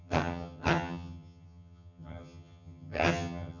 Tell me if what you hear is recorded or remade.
remade